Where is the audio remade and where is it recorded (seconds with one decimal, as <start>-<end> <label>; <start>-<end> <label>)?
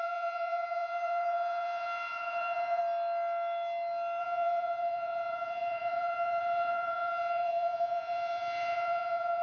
0.0-2.8 remade; 2.8-4.2 recorded; 4.2-9.4 remade